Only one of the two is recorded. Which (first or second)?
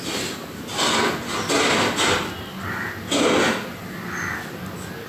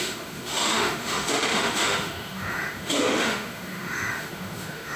first